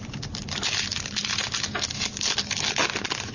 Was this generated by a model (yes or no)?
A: no